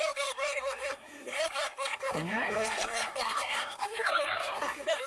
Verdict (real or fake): fake